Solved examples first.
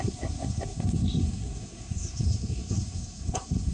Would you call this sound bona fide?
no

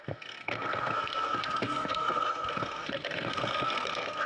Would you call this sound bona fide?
no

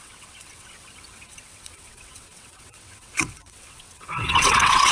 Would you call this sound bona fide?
no